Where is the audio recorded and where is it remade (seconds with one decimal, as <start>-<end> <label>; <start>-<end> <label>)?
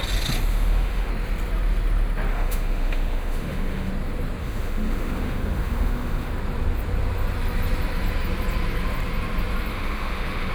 0.0-0.5 recorded; 0.5-1.1 remade; 1.1-2.3 recorded; 2.3-3.9 remade; 3.9-4.4 recorded; 4.4-6.3 remade; 6.3-9.7 recorded; 9.7-10.5 remade